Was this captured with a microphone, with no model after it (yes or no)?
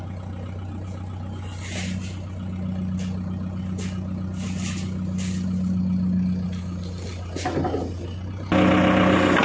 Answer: yes